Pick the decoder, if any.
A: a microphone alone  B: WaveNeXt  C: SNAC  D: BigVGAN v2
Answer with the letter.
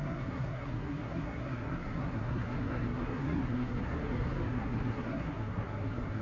C